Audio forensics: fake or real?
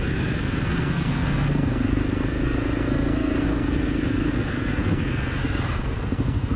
fake